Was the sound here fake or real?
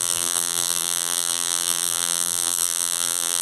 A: fake